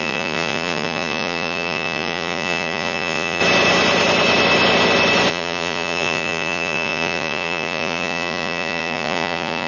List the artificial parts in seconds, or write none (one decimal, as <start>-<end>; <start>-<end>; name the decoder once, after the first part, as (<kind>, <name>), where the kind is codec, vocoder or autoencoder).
0.0-3.4 (vocoder, Vocos); 5.3-9.7

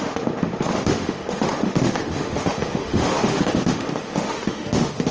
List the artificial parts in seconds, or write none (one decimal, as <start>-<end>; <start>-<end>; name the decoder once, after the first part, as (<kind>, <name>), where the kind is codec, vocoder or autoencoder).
0.0-5.1 (autoencoder, DAC-VAE)

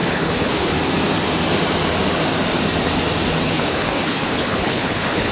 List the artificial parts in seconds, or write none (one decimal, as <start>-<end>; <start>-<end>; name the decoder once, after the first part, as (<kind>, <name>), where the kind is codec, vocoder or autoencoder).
0.0-0.7 (codec, HILCodec); 3.4-5.3

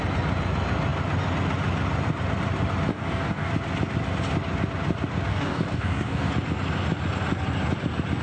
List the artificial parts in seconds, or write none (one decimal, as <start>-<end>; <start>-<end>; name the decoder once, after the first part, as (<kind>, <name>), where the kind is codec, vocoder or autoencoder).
2.9-3.5 (codec, DAC); 5.3-6.3

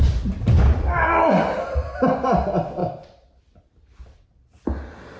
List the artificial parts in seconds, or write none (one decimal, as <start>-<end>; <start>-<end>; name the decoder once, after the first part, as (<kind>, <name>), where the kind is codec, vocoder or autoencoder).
none

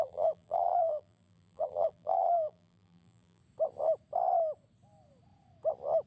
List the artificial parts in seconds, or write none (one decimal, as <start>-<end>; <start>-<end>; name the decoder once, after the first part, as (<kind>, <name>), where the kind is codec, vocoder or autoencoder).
0.0-3.4 (vocoder, BigVGAN v2)